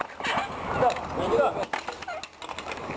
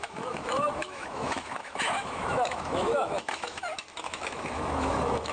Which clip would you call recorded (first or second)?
first